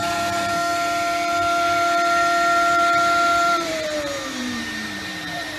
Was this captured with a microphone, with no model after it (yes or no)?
no